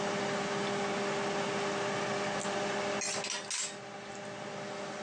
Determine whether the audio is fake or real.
real